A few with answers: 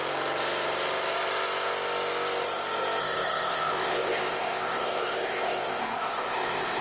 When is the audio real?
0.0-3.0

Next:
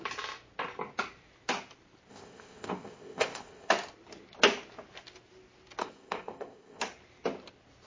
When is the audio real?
0.0-2.1; 3.7-5.8; 6.8-7.9